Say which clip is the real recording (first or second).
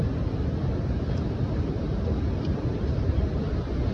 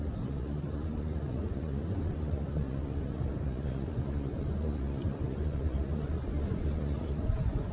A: first